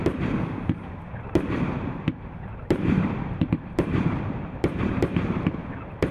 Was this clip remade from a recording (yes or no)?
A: yes